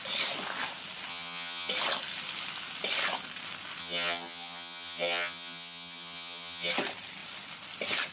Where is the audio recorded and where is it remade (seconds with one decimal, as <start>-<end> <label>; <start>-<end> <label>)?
0.0-1.1 recorded; 1.1-1.7 remade; 1.7-3.8 recorded; 3.8-6.7 remade; 6.7-8.1 recorded